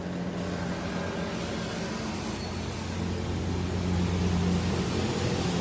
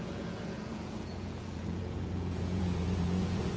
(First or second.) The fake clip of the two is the second